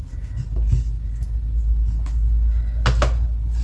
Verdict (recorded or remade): recorded